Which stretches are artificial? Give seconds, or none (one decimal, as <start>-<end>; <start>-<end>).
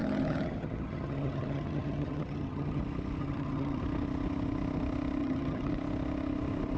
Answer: 0.0-2.8; 3.2-3.8; 5.2-5.7